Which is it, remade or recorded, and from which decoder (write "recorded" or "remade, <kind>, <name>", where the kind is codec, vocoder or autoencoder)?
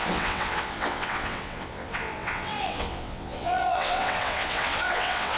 remade, vocoder, WaveNeXt